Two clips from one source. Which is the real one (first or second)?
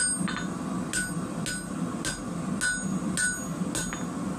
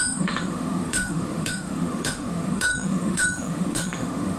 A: first